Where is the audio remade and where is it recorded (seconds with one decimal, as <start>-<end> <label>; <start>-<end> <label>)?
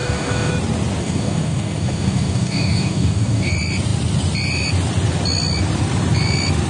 0.0-0.5 remade; 0.5-1.0 recorded; 1.0-3.5 remade; 3.5-6.7 recorded